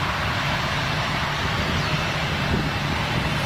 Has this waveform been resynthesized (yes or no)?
no